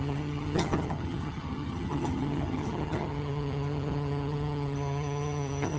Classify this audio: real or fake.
fake